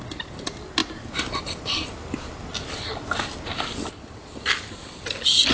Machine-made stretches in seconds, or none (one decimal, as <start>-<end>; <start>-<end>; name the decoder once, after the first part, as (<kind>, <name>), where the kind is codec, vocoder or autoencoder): none